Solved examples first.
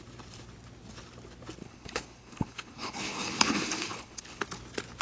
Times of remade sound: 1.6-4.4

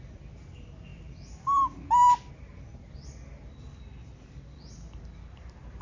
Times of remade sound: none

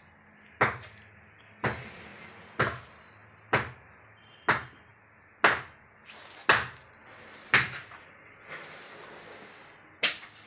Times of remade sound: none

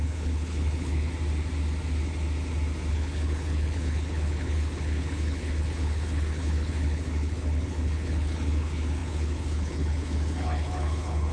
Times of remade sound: 0.0-1.1; 2.9-11.3

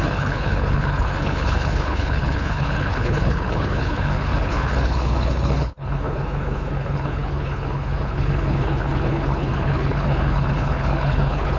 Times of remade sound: 0.0-11.6

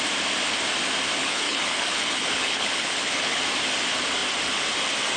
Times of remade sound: 1.2-3.4

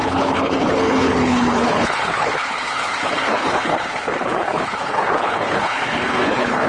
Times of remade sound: 0.0-6.7